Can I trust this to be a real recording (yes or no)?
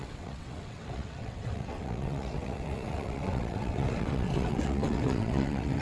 no